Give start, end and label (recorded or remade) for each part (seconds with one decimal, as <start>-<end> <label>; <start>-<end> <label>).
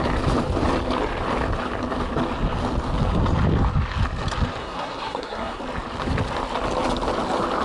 0.0-4.6 recorded; 4.6-5.6 remade; 5.6-7.6 recorded